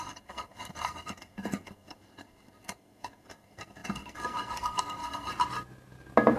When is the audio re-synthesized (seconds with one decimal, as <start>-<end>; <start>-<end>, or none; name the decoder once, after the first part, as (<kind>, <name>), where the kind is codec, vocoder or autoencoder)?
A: 0.0-5.3 (codec, SNAC)